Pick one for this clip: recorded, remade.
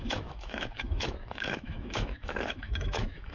remade